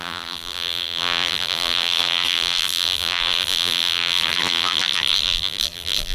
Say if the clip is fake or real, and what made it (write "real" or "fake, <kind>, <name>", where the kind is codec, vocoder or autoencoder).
fake, vocoder, BigVGAN v2